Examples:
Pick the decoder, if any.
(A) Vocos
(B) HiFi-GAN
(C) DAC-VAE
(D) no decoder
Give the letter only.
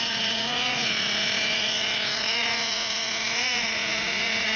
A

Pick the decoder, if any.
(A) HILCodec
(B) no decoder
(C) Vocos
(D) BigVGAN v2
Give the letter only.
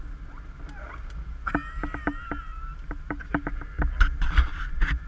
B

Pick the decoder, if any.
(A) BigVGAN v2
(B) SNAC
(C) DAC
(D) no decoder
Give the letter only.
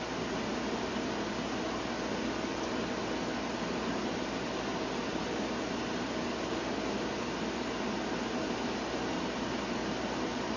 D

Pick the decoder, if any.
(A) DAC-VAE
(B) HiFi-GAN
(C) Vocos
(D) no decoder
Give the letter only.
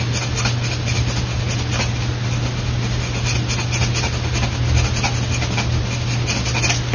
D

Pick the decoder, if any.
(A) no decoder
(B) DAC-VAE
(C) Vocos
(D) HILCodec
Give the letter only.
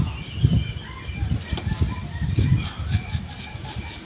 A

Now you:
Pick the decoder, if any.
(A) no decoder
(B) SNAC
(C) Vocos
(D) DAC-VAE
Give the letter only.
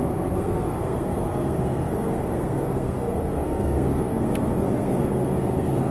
B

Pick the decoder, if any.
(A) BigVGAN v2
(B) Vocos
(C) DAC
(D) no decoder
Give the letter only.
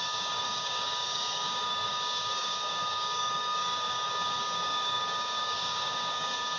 C